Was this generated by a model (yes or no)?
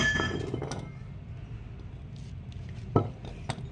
no